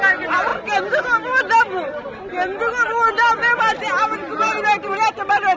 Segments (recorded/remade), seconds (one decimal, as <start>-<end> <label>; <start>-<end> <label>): 0.0-5.6 recorded